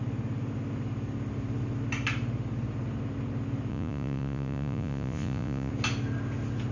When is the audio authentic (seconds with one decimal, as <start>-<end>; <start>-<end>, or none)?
0.0-3.7; 5.7-6.7